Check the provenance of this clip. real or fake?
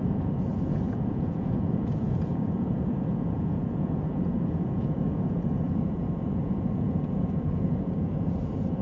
fake